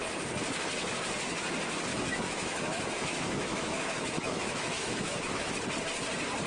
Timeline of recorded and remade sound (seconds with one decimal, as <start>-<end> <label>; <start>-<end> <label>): 0.0-1.9 recorded; 1.9-5.5 remade; 5.5-6.5 recorded